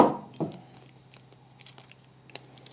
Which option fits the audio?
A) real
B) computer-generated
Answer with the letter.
A